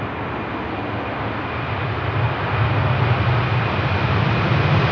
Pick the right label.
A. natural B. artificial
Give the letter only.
A